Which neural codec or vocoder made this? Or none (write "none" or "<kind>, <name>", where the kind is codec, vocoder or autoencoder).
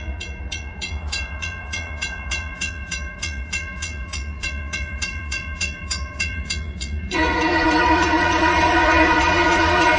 vocoder, Vocos